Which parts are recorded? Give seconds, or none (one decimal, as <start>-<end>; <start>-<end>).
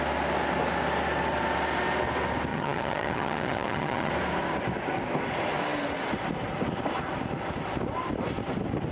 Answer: 0.0-2.5; 4.1-8.9